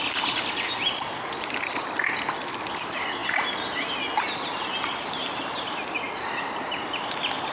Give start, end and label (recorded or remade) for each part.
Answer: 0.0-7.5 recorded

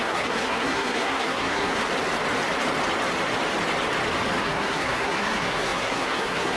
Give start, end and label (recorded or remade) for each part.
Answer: 0.0-1.8 remade; 1.8-4.4 recorded; 4.4-6.6 remade

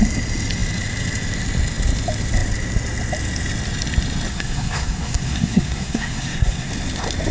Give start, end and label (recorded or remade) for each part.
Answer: 0.0-4.3 recorded; 4.3-6.7 remade; 6.7-7.3 recorded

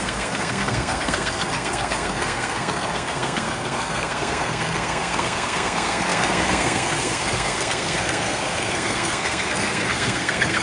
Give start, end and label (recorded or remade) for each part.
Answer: 0.0-10.6 remade

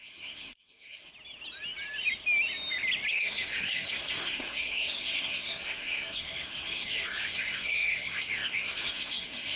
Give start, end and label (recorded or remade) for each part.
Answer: 0.0-1.1 remade; 1.1-3.1 recorded; 3.1-9.6 remade

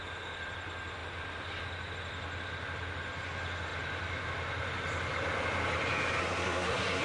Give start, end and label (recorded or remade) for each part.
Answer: 0.0-6.2 recorded; 6.2-7.0 remade